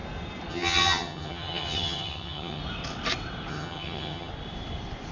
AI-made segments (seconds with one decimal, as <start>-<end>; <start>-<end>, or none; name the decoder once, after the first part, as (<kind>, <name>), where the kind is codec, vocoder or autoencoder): 0.5-2.6 (vocoder, HiFi-GAN); 3.5-4.3